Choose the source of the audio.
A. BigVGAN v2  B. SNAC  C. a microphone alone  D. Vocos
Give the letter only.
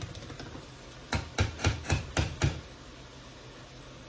C